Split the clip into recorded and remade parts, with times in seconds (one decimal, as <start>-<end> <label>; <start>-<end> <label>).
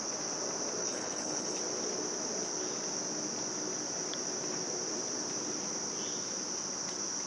0.0-0.8 recorded; 0.8-1.6 remade; 1.6-7.3 recorded